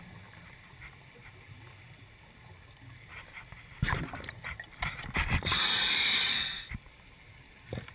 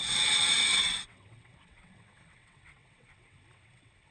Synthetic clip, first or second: second